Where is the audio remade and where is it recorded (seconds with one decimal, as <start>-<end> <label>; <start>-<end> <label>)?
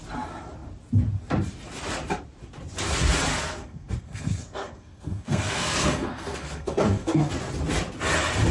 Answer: 0.0-3.3 recorded; 3.3-7.3 remade; 7.3-8.5 recorded